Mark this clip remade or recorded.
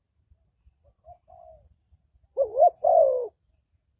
remade